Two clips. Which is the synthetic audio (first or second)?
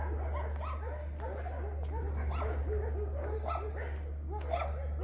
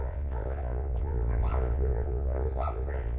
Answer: second